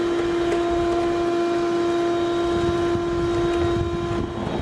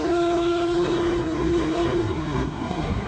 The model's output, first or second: second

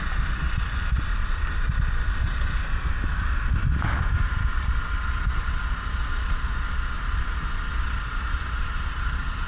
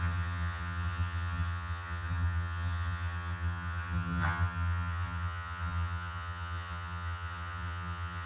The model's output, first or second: second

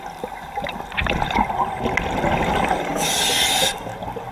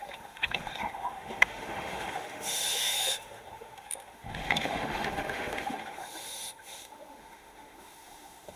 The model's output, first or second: second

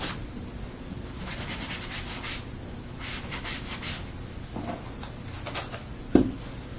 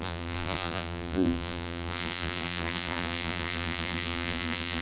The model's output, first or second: second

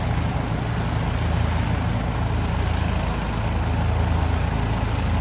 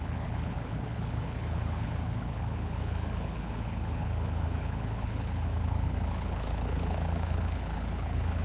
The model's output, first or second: second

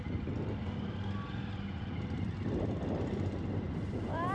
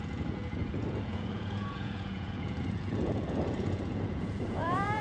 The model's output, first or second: second